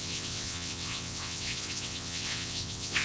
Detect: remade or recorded remade